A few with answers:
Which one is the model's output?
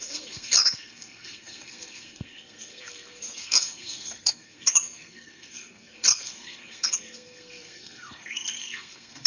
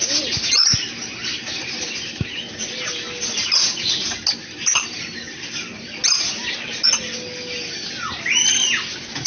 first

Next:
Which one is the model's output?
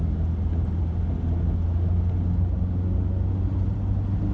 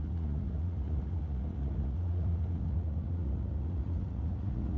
second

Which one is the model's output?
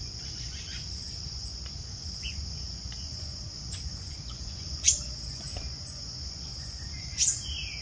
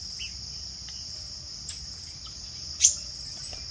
first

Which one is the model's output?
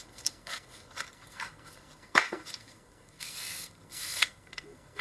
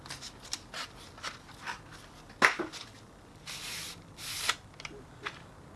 first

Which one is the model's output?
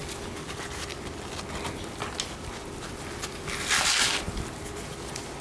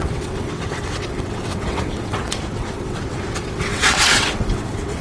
second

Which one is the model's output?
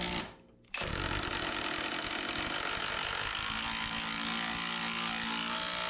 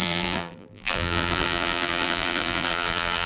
second